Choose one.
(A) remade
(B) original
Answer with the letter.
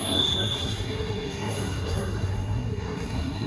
A